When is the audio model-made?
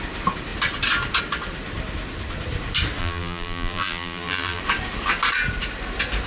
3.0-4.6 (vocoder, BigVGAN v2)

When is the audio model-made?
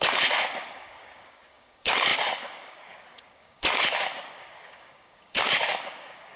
0.0-6.4 (codec, DAC)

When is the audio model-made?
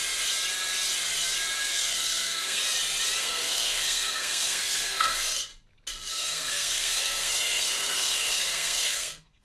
1.6-2.6 (codec, SNAC); 3.2-5.5; 6.1-9.4